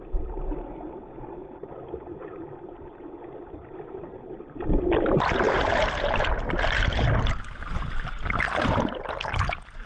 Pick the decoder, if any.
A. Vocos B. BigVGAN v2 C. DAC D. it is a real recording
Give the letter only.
D